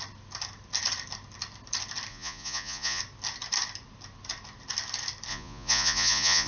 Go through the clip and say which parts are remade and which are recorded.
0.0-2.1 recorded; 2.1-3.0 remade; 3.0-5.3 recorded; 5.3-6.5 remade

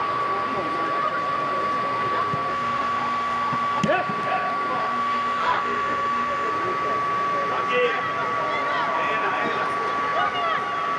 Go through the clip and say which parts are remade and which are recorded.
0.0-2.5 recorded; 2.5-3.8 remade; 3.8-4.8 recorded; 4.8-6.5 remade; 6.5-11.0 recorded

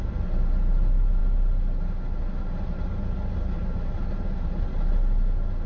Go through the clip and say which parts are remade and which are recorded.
0.0-5.7 recorded